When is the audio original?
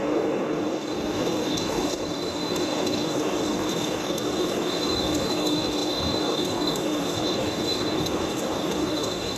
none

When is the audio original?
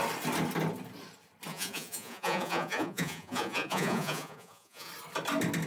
0.0-1.5; 4.9-5.7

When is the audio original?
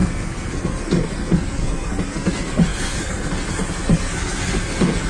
none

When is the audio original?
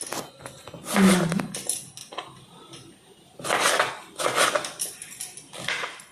0.0-6.1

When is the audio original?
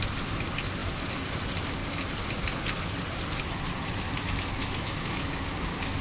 0.0-4.6; 5.4-6.0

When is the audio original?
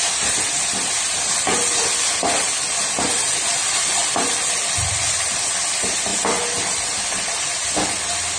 0.0-8.4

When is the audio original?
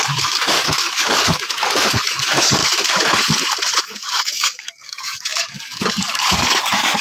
2.6-3.8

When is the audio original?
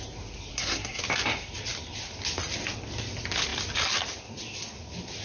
0.0-0.5; 1.0-5.2